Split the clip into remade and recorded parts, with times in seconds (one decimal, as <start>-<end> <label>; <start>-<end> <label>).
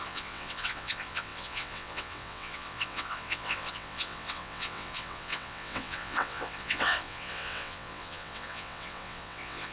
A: 0.0-9.7 remade